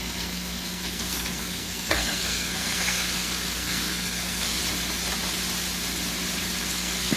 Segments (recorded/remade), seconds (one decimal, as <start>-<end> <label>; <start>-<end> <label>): 0.0-4.6 remade; 4.6-6.6 recorded; 6.6-7.2 remade